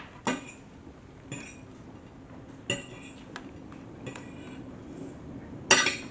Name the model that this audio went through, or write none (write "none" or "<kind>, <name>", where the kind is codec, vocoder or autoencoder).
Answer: none